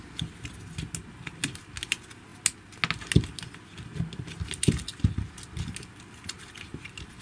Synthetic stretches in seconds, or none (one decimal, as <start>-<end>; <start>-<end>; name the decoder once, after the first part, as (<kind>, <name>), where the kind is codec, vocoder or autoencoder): none